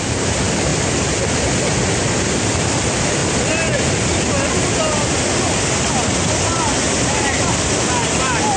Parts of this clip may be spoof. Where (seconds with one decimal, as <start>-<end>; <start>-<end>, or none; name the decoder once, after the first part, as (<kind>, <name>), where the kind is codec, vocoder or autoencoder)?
0.0-0.7 (vocoder, BigVGAN v2); 1.5-3.2